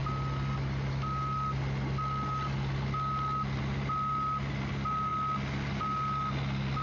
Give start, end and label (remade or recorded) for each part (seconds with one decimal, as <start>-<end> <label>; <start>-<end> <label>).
0.0-6.8 recorded